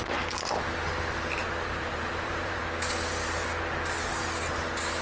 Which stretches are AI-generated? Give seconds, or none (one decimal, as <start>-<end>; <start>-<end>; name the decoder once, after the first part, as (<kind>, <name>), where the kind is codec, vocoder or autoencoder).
1.4-2.6 (vocoder, BigVGAN v2)